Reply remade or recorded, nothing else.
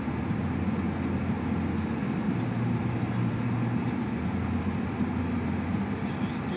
recorded